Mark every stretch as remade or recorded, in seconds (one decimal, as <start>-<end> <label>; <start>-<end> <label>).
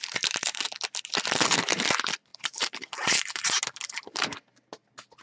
0.0-2.3 recorded; 2.3-3.6 remade; 3.6-5.2 recorded